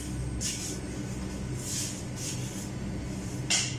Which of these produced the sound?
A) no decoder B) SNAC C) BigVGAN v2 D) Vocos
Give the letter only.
A